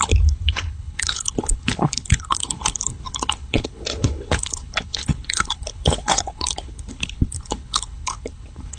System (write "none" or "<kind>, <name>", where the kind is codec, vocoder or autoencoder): codec, HILCodec